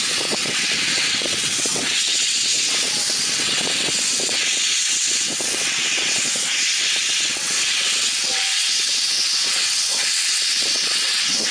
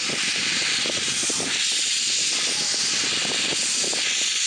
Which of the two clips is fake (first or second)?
first